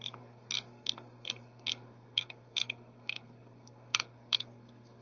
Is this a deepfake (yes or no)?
yes